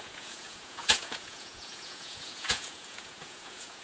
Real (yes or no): no